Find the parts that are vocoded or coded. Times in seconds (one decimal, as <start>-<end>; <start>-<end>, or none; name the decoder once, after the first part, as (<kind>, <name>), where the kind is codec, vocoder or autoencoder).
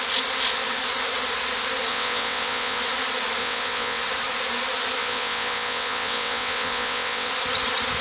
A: 1.9-2.8 (vocoder, WaveNeXt); 3.4-4.0; 5.0-7.3